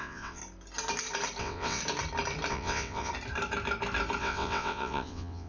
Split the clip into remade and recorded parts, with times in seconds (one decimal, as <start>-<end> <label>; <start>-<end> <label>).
0.0-0.4 remade; 0.4-1.4 recorded; 1.4-1.8 remade; 1.8-2.5 recorded; 2.5-3.1 remade; 3.1-4.2 recorded; 4.2-5.5 remade